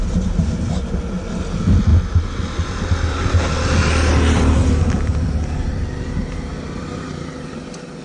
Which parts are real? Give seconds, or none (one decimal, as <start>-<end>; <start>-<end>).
0.0-8.0